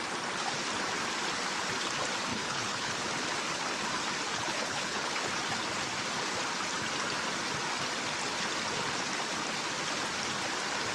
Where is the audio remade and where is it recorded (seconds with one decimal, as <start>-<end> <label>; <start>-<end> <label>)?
0.0-2.3 recorded; 2.3-2.9 remade; 2.9-4.3 recorded; 4.3-5.3 remade; 5.3-10.9 recorded